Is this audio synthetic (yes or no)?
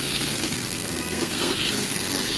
yes